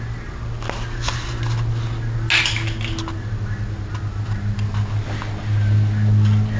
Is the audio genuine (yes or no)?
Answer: yes